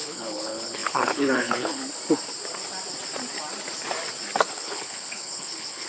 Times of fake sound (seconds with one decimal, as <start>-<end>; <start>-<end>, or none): 0.0-1.8; 4.5-5.9